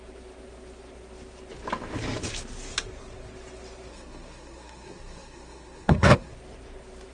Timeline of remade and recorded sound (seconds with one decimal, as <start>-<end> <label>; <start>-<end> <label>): 0.0-3.9 recorded; 3.9-6.3 remade; 6.3-7.1 recorded